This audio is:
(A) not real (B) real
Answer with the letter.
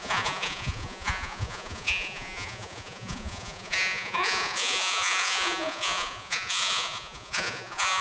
A